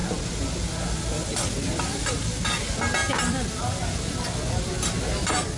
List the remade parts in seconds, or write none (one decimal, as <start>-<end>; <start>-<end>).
none